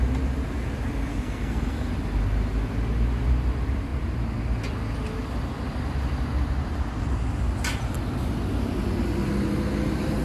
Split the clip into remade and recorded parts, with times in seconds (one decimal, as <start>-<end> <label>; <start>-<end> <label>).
0.0-1.1 recorded; 1.1-1.9 remade; 1.9-10.2 recorded